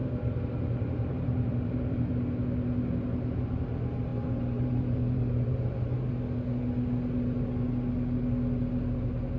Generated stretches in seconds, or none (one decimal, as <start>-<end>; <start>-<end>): 0.0-2.1; 4.1-6.1